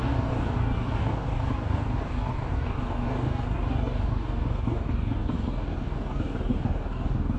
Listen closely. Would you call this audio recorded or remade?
remade